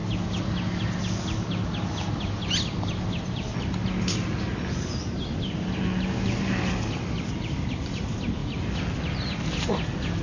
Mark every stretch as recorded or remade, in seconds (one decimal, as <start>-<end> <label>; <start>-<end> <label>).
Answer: 0.0-10.2 recorded